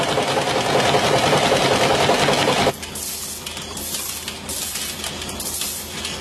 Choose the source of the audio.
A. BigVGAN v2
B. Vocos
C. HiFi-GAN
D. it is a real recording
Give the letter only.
D